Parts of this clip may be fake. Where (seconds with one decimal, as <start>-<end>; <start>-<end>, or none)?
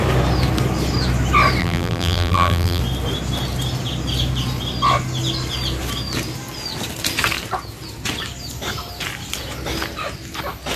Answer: 1.6-2.8